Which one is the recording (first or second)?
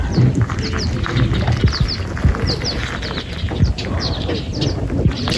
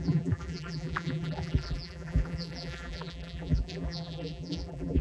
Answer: first